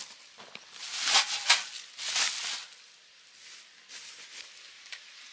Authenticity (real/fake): real